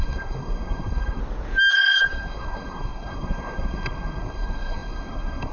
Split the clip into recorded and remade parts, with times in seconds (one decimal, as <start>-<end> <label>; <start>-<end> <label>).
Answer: 0.0-1.2 remade; 1.2-1.7 recorded; 1.7-5.5 remade